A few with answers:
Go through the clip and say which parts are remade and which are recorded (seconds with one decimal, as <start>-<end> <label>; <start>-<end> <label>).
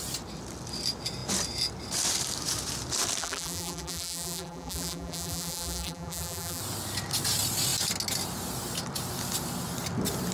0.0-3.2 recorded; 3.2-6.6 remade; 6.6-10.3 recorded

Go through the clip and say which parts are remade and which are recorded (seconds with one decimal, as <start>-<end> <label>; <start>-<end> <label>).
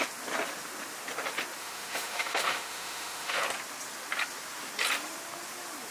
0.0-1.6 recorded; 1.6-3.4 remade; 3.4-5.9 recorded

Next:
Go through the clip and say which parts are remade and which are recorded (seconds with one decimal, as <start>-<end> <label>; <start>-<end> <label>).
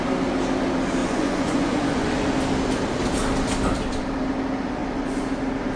0.0-1.0 recorded; 1.0-2.1 remade; 2.1-5.8 recorded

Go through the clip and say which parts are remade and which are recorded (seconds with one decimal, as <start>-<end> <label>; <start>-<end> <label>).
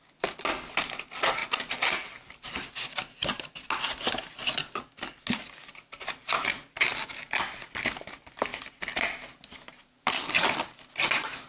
0.0-11.5 recorded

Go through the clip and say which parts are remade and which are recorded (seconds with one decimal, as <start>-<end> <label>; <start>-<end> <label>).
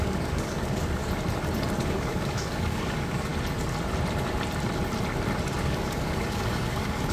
0.0-1.0 remade; 1.0-1.8 recorded; 1.8-3.3 remade; 3.3-5.6 recorded; 5.6-7.1 remade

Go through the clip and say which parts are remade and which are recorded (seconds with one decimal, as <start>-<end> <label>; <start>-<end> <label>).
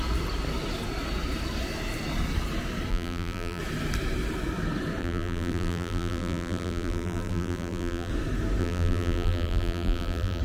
0.0-2.9 recorded; 2.9-3.6 remade; 3.6-5.0 recorded; 5.0-8.1 remade; 8.1-8.6 recorded; 8.6-10.4 remade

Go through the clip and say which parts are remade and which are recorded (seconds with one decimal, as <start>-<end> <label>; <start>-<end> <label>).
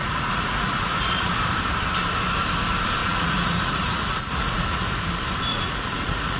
0.0-1.3 remade; 1.3-3.0 recorded; 3.0-5.0 remade; 5.0-5.5 recorded; 5.5-6.4 remade